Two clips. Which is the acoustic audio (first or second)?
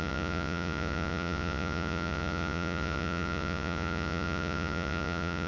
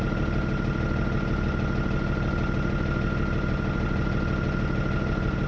second